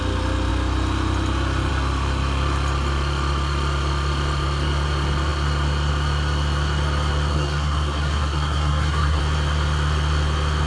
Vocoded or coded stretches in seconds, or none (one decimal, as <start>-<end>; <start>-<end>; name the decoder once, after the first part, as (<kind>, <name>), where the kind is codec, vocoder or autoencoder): 7.3-9.2 (codec, SNAC)